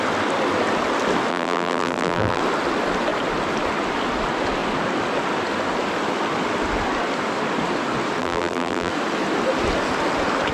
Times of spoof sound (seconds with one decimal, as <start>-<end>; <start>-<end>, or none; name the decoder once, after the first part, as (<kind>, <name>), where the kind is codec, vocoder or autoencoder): 1.3-2.4 (vocoder, BigVGAN v2); 8.2-8.9